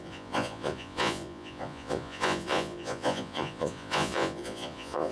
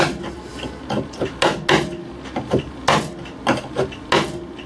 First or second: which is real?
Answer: second